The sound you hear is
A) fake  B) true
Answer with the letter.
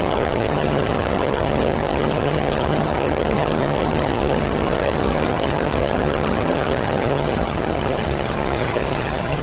A